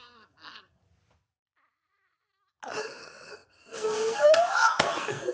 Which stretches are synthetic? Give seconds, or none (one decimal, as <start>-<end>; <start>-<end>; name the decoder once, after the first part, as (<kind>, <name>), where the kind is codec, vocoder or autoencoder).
0.0-0.8 (codec, SNAC); 2.8-5.3